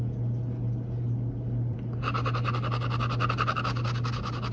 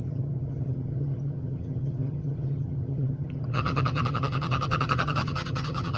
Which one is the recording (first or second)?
first